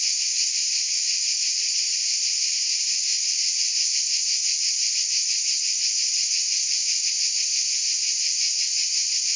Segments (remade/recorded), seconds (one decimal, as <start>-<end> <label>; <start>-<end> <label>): 0.0-9.4 remade